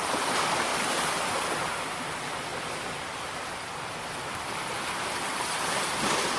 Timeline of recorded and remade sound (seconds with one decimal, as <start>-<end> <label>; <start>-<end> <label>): 0.0-6.4 recorded